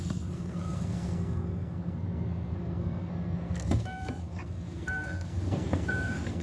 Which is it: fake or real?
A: fake